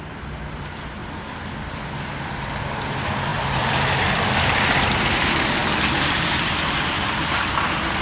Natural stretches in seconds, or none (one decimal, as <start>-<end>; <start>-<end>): 1.0-1.6